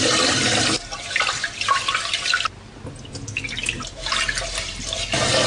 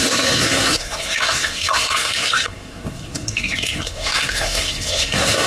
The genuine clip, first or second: first